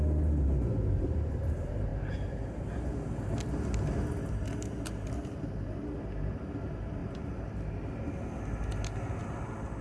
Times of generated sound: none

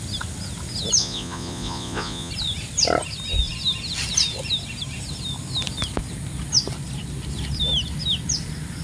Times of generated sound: 1.0-2.3

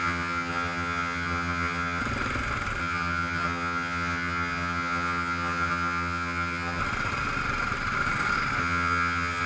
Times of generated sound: 0.0-2.0; 2.8-6.8; 8.6-9.5

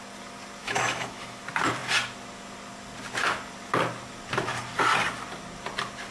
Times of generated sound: 0.6-1.4

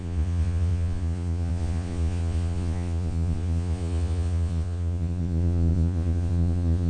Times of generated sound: 0.0-6.9

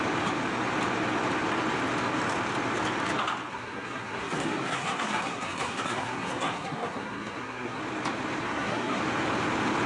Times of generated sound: 3.5-7.8; 8.4-9.0

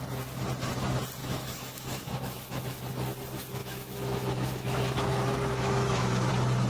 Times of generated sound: 1.2-2.8; 3.6-6.3